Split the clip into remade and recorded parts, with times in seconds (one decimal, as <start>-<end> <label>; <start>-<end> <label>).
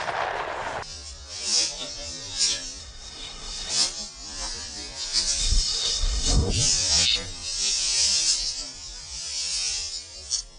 0.0-2.8 recorded; 2.8-3.7 remade; 3.7-5.4 recorded; 5.4-6.5 remade; 6.5-10.6 recorded